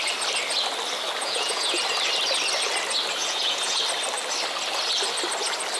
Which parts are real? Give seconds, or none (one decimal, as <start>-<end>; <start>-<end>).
0.0-1.2; 1.8-3.2; 3.8-5.8